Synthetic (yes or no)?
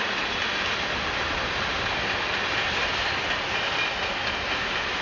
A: no